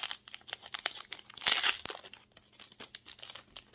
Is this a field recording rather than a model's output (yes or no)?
yes